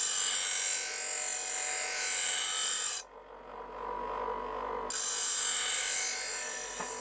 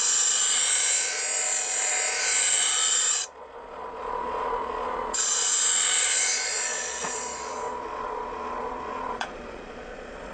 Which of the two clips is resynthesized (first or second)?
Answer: second